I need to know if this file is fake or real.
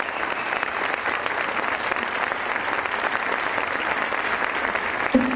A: real